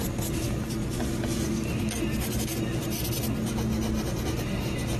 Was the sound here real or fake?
real